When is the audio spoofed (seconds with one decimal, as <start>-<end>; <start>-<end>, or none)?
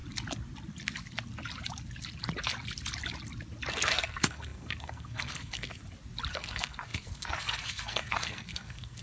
3.7-5.8; 6.3-9.0